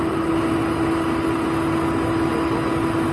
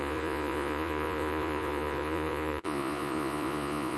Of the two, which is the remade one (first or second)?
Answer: second